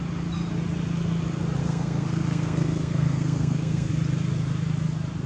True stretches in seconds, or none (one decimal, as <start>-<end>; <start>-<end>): 0.0-1.6; 3.9-5.3